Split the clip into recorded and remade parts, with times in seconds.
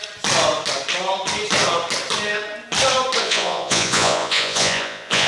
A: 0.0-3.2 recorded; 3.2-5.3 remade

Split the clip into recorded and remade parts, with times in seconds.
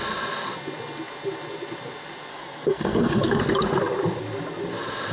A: 0.0-2.3 recorded; 2.3-3.4 remade; 3.4-5.1 recorded